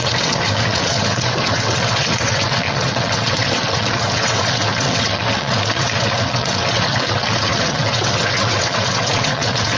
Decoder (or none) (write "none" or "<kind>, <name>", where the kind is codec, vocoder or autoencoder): vocoder, WaveNeXt